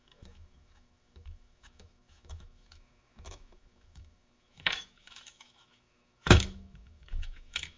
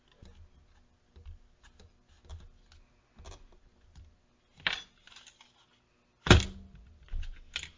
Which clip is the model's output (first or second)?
first